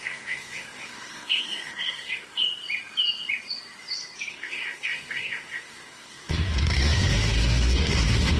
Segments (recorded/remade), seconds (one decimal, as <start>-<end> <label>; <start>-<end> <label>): 0.0-2.5 remade; 2.5-4.3 recorded; 4.3-8.4 remade